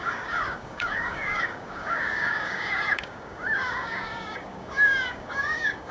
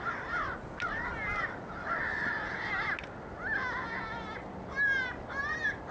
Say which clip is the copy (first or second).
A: first